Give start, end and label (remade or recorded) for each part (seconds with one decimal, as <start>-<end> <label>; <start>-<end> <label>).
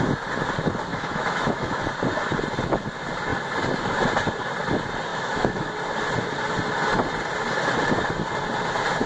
0.0-0.9 recorded; 0.9-1.8 remade; 1.8-5.1 recorded; 5.1-5.7 remade; 5.7-9.1 recorded